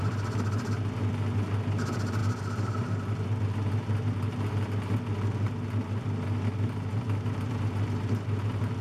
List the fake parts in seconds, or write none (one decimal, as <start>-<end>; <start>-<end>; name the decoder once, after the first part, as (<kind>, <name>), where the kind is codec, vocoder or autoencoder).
none